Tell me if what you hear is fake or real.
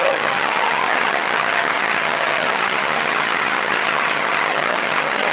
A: fake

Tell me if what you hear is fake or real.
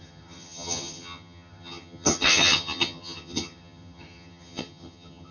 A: fake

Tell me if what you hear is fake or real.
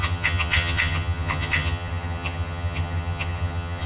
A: fake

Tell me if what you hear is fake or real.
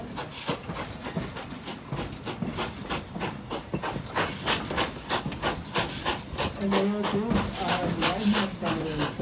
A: real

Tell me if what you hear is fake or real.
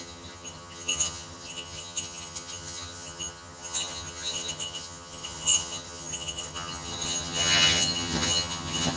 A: fake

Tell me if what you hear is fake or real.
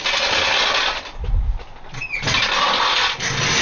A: real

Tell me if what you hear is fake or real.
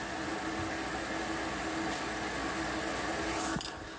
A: real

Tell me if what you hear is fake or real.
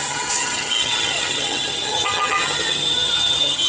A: fake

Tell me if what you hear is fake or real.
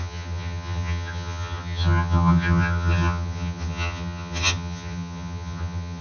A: fake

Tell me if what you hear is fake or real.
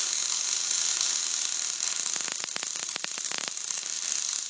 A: real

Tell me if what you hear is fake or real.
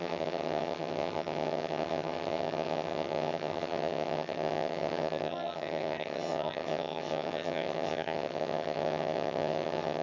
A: fake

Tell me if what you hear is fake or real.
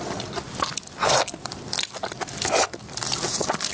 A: real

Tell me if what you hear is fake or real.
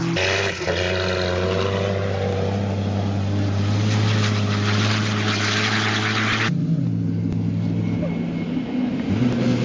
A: real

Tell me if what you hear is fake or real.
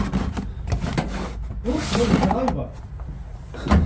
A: real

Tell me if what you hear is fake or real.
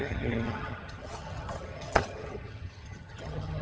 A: fake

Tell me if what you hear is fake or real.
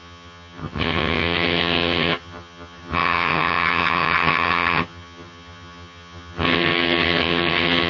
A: fake